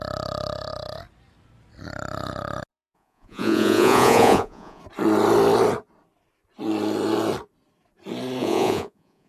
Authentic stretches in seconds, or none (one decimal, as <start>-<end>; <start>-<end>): 0.0-2.7; 4.8-8.4